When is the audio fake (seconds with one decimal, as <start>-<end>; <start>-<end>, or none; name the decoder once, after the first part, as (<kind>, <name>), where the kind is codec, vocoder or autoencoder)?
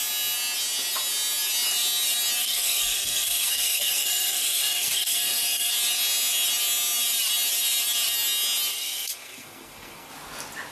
2.4-5.7 (codec, SNAC); 8.7-10.1